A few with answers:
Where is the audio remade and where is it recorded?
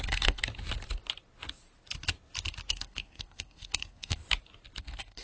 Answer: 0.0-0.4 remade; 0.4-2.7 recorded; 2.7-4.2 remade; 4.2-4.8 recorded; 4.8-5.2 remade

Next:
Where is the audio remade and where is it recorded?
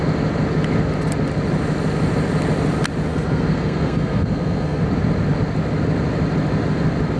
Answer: 0.0-3.1 recorded; 3.1-4.8 remade; 4.8-7.2 recorded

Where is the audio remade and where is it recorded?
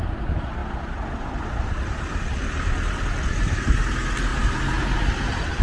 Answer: 0.0-5.6 recorded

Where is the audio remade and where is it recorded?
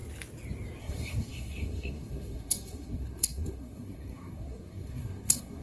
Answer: 0.0-0.8 recorded; 0.8-5.6 remade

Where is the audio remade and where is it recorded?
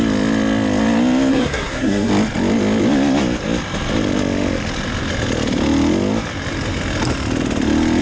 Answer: 0.0-1.3 recorded; 1.3-2.1 remade; 2.1-8.0 recorded